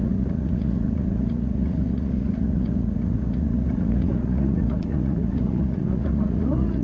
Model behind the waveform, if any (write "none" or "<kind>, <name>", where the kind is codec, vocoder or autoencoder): vocoder, Vocos